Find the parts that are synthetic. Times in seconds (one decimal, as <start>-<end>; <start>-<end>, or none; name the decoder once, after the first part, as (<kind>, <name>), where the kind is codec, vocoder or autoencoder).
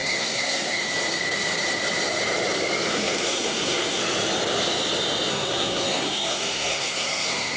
0.0-0.8 (codec, SNAC); 2.9-4.0; 5.3-7.6